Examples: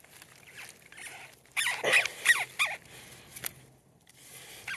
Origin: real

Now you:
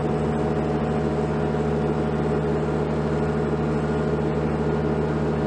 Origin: real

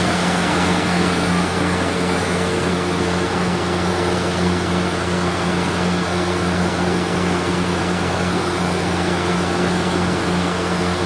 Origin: fake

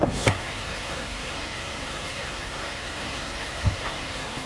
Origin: fake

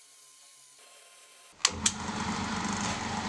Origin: real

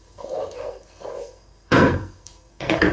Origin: fake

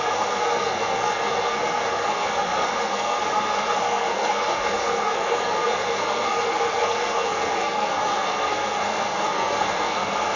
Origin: fake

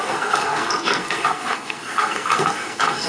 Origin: fake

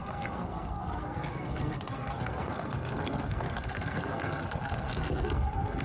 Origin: fake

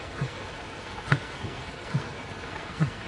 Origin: fake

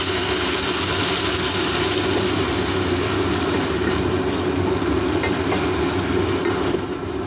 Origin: real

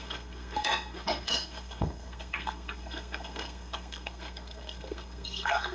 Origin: fake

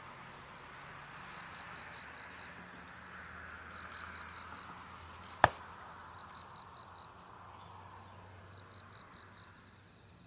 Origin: real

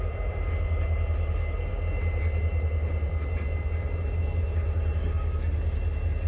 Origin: real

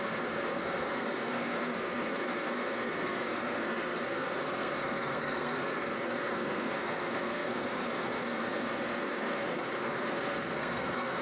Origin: fake